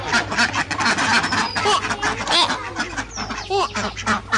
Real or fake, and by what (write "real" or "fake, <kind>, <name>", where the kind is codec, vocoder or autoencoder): real